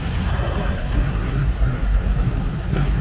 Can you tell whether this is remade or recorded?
remade